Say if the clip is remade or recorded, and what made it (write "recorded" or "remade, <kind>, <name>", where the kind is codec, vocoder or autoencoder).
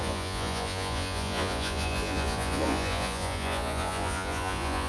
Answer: remade, vocoder, Vocos